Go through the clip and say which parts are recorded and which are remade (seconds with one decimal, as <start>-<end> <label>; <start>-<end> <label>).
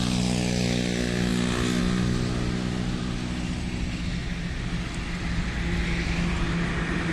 0.0-7.1 recorded